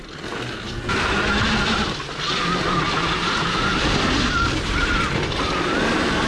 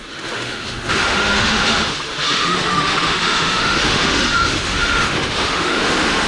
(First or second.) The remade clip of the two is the second